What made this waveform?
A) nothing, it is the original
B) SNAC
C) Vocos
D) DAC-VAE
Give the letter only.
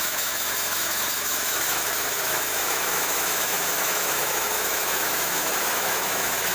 D